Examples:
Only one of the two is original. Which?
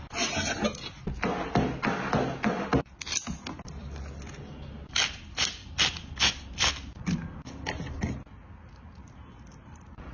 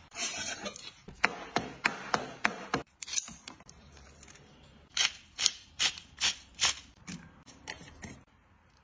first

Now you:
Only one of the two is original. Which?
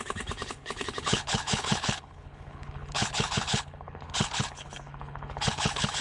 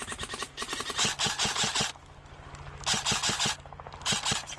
second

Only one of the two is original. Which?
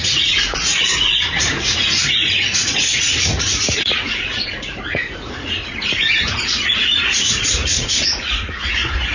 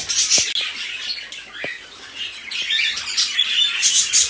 second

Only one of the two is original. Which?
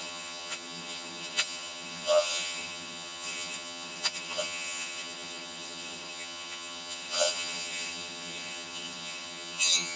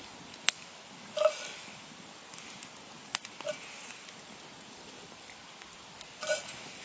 second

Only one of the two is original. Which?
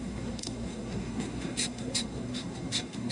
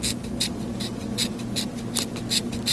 second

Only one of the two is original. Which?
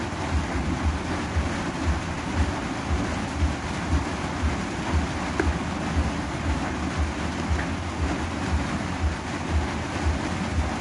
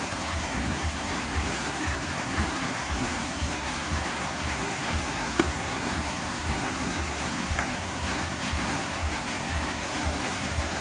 first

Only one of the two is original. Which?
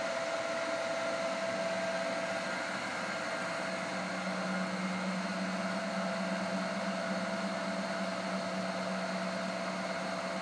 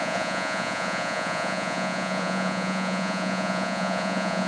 first